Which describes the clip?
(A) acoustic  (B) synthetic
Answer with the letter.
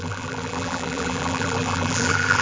B